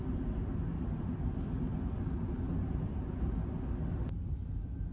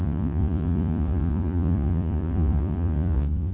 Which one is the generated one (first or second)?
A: second